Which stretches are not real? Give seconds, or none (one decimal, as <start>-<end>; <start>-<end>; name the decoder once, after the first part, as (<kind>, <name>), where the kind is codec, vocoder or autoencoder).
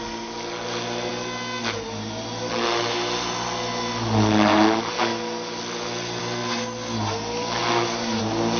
none